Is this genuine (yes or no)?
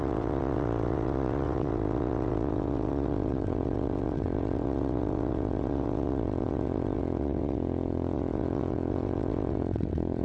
no